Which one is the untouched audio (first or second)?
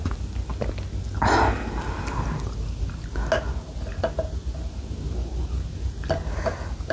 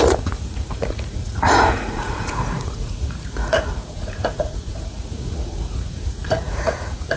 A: first